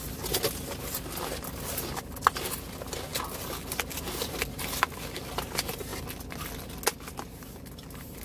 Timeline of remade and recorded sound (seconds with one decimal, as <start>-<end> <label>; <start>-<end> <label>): 0.0-8.2 recorded